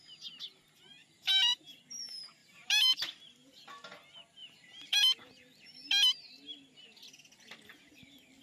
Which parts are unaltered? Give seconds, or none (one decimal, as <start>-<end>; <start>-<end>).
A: 0.0-1.0; 1.8-2.4; 3.2-4.4; 5.0-8.4